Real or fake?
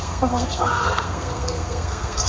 fake